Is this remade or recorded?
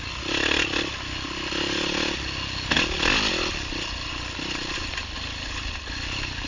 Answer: recorded